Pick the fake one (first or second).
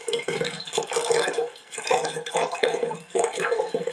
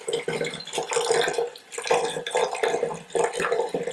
first